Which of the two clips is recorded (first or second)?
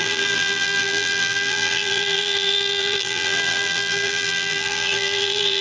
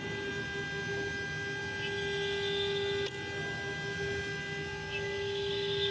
second